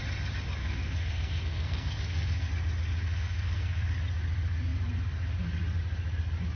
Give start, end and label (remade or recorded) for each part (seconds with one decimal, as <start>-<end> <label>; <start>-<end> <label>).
0.0-0.6 recorded; 0.6-2.5 remade; 2.5-3.0 recorded; 3.0-3.9 remade; 3.9-6.6 recorded